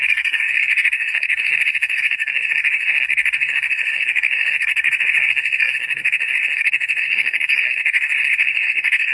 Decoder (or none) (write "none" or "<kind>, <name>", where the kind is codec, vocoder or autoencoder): codec, SNAC